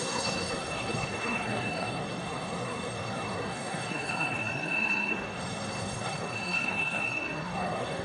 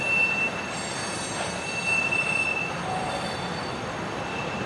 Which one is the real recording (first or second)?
second